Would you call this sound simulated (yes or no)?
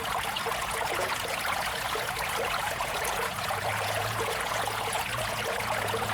yes